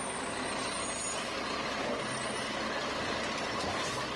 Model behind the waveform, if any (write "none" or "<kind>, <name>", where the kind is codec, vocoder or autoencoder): none